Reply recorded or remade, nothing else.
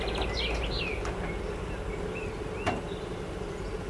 recorded